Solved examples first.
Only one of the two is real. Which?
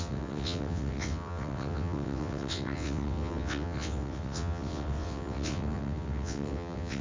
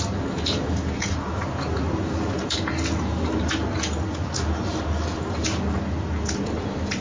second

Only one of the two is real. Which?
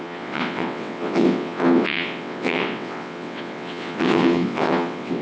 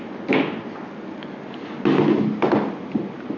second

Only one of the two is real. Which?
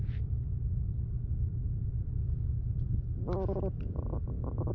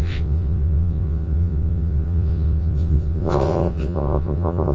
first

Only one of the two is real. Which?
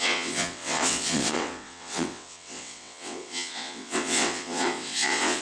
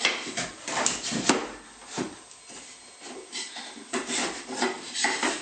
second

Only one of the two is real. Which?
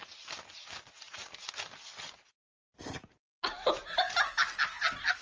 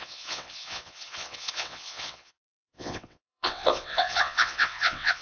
first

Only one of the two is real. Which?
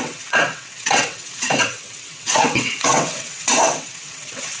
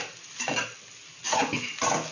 second